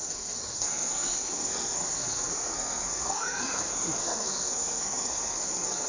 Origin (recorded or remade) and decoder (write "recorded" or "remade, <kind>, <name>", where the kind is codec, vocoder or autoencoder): remade, codec, SNAC